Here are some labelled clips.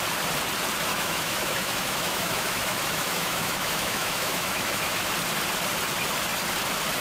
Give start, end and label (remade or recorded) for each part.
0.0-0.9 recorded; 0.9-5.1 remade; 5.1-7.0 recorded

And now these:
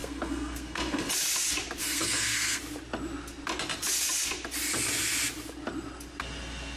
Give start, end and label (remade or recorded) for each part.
0.0-1.1 remade; 1.1-1.8 recorded; 1.8-2.6 remade; 2.6-6.8 recorded